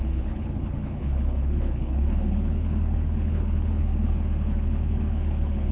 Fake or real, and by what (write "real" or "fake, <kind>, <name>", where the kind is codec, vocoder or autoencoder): fake, codec, HILCodec